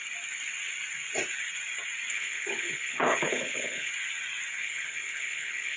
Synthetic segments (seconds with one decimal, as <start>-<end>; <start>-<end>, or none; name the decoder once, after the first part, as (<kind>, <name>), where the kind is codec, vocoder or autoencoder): 2.1-3.9 (codec, HILCodec); 4.6-5.8